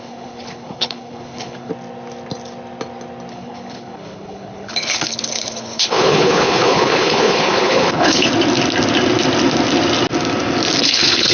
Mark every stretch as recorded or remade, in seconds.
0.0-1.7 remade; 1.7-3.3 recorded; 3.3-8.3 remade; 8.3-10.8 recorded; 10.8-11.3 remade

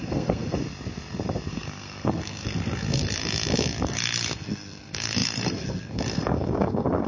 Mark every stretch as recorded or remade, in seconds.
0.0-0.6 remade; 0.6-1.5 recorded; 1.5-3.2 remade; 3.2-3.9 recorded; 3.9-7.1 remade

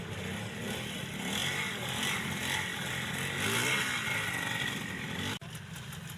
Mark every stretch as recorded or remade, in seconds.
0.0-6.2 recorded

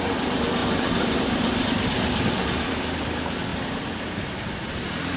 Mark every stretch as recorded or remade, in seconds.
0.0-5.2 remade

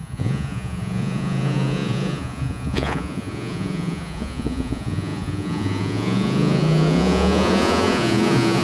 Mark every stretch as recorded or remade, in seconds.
0.0-8.6 remade

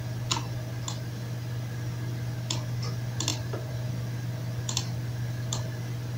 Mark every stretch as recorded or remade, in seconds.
0.0-3.3 recorded; 3.3-3.9 remade; 3.9-6.2 recorded

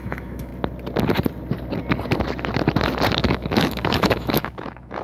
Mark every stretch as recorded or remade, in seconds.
0.0-0.5 remade; 0.5-3.2 recorded; 3.2-5.0 remade

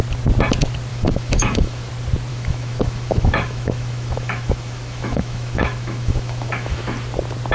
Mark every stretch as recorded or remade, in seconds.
0.0-0.9 recorded; 0.9-1.9 remade; 1.9-2.3 recorded; 2.3-6.8 remade; 6.8-7.5 recorded